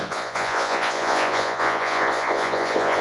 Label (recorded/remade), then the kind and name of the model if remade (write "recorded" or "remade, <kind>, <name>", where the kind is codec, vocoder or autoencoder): remade, vocoder, Vocos